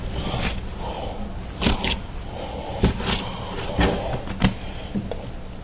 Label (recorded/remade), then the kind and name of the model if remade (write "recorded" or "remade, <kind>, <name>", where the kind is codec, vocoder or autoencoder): recorded